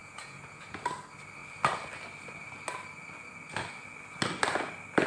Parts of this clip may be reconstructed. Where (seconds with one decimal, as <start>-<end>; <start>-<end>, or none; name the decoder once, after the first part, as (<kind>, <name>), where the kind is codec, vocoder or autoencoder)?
0.0-0.8 (vocoder, Vocos)